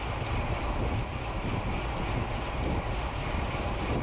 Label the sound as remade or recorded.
recorded